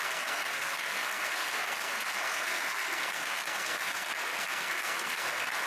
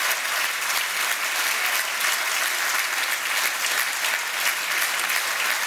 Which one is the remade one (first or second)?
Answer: first